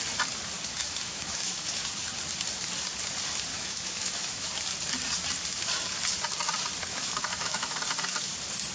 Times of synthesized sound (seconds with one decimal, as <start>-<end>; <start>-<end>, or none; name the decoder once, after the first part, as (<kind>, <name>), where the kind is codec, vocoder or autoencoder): 0.8-1.8 (autoencoder, DAC-VAE); 3.5-4.5; 6.9-7.8